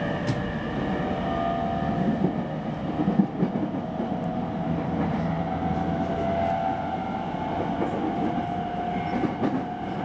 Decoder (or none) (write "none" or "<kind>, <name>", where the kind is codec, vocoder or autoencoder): none